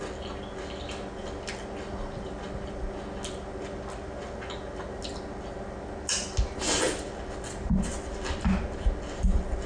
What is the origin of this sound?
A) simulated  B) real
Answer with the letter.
B